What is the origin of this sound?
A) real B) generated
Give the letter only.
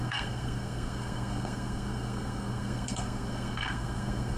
B